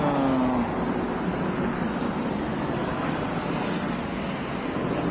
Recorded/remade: recorded